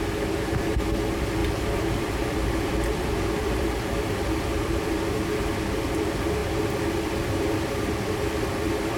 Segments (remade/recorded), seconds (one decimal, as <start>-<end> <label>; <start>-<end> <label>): 0.0-1.4 recorded; 1.4-4.9 remade; 4.9-9.0 recorded